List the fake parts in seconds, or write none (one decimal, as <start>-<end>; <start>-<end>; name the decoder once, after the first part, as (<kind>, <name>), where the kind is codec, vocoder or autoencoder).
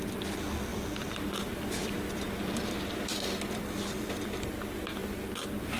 0.7-4.2 (vocoder, BigVGAN v2)